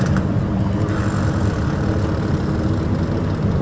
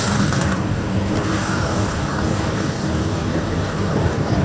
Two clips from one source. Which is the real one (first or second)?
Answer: first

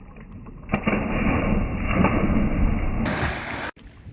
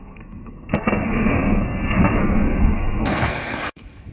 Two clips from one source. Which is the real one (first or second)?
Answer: first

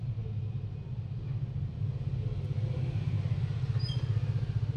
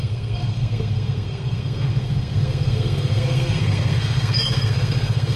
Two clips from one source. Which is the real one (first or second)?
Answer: first